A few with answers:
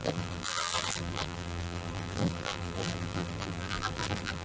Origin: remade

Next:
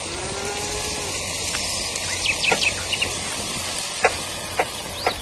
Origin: remade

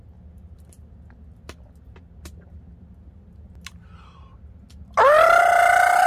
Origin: recorded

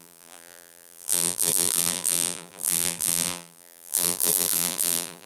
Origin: remade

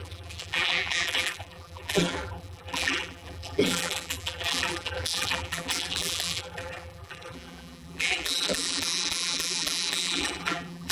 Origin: remade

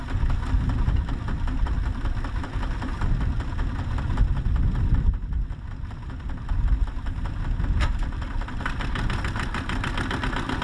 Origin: recorded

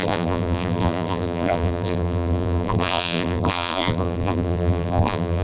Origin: remade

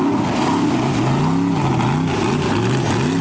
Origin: recorded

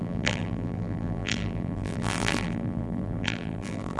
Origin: remade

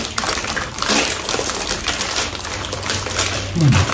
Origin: remade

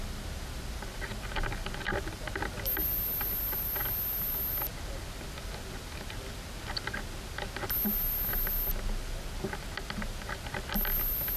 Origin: recorded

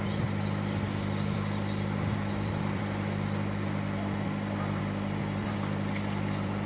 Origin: recorded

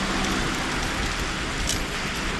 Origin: recorded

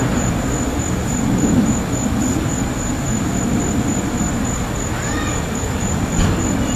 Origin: recorded